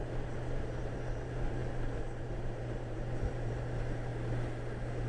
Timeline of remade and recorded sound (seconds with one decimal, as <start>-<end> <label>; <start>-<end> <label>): 0.0-4.1 remade; 4.1-5.1 recorded